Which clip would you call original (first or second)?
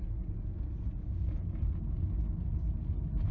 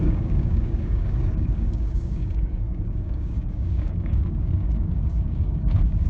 first